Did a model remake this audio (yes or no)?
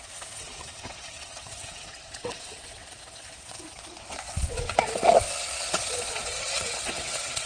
yes